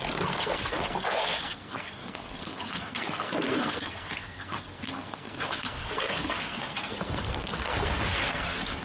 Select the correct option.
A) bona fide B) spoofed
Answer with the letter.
B